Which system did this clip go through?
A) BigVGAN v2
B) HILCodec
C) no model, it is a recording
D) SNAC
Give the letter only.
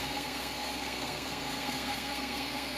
D